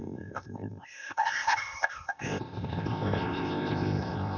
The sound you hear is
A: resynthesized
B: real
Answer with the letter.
A